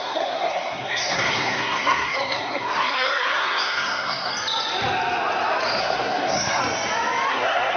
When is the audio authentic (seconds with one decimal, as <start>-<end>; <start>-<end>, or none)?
4.3-5.8; 6.6-7.3